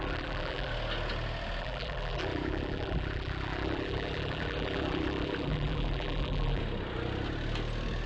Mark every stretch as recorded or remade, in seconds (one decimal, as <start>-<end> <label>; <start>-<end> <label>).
0.0-0.7 remade; 0.7-1.6 recorded; 1.6-6.6 remade; 6.6-8.1 recorded